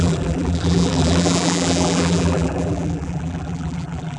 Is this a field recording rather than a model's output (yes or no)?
no